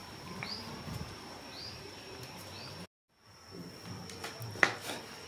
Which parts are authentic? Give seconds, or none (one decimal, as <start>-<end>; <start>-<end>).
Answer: 3.2-5.3